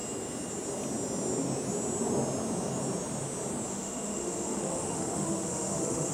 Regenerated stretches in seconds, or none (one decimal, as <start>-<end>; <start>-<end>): 3.7-6.1